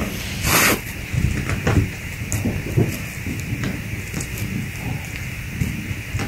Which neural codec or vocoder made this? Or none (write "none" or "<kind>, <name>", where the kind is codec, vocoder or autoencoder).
none